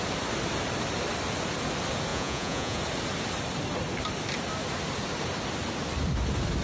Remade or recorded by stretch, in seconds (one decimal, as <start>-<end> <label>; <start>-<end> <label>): 0.0-2.1 recorded; 2.1-2.8 remade; 2.8-6.6 recorded

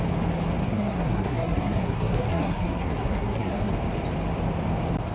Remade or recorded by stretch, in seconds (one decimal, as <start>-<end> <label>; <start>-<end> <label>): 0.0-0.6 recorded; 0.6-3.7 remade; 3.7-5.1 recorded

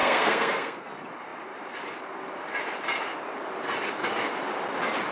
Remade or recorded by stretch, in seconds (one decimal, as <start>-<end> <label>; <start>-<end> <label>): 0.0-0.9 remade; 0.9-5.1 recorded

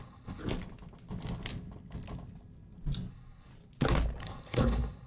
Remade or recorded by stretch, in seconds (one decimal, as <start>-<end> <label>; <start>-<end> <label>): 0.0-0.4 remade; 0.4-3.1 recorded; 3.1-3.5 remade; 3.5-4.2 recorded; 4.2-5.1 remade

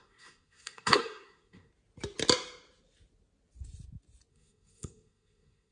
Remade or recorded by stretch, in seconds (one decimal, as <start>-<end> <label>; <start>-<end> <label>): 0.0-1.7 remade; 1.7-4.3 recorded; 4.3-5.7 remade

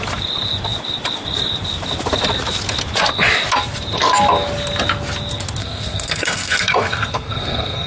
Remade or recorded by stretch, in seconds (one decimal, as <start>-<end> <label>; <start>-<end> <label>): 0.0-5.6 recorded; 5.6-7.9 remade

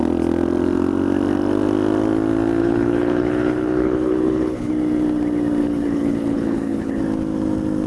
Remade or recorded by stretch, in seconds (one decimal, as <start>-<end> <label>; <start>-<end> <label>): 0.0-2.6 recorded; 2.6-4.7 remade; 4.7-5.6 recorded; 5.6-7.0 remade; 7.0-7.9 recorded

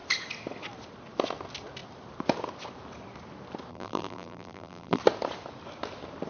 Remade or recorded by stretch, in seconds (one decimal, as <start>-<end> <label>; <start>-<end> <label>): 0.0-3.7 recorded; 3.7-5.0 remade; 5.0-6.3 recorded